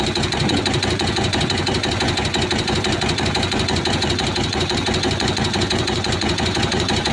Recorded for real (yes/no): no